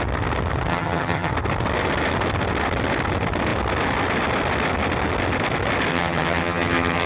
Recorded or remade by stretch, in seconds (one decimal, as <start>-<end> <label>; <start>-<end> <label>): 0.0-0.7 recorded; 0.7-1.3 remade; 1.3-5.9 recorded; 5.9-7.1 remade